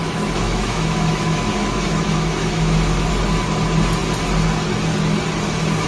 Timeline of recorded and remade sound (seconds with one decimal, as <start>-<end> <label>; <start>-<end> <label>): 0.0-3.1 remade; 3.1-5.9 recorded